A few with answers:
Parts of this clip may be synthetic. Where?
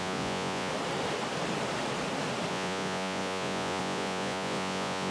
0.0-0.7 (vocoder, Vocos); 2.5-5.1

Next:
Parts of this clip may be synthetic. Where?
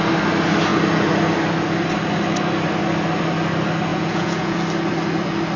3.9-4.6 (vocoder, Vocos)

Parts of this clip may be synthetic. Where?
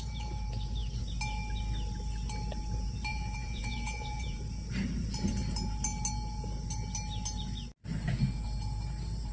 3.1-4.4 (vocoder, Vocos)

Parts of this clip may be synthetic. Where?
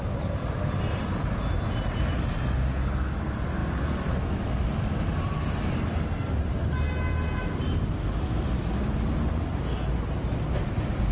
none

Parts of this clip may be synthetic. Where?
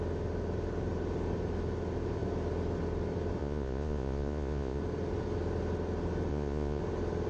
3.4-4.8 (vocoder, Vocos); 6.3-6.8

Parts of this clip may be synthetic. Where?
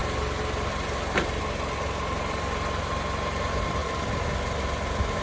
none